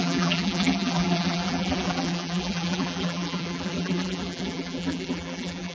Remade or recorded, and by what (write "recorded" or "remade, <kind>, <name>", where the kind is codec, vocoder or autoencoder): remade, vocoder, BigVGAN v2